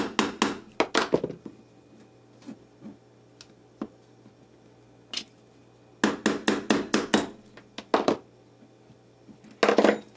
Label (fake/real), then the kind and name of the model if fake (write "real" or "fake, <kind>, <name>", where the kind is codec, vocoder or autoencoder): real